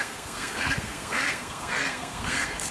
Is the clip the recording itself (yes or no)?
no